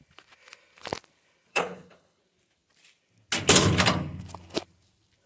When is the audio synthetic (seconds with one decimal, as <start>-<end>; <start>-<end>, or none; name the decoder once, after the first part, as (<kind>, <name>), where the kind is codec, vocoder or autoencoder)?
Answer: 1.5-2.2 (codec, HILCodec)